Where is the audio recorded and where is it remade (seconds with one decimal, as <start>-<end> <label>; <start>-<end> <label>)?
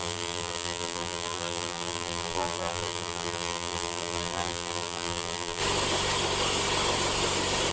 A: 0.0-5.6 remade; 5.6-7.7 recorded